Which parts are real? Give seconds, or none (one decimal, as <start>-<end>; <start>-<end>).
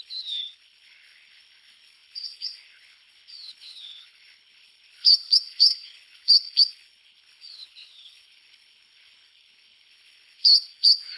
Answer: none